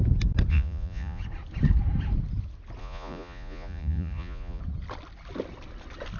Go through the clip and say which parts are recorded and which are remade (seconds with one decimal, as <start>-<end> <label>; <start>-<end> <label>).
0.0-0.5 recorded; 0.5-1.2 remade; 1.2-2.8 recorded; 2.8-4.6 remade; 4.6-6.2 recorded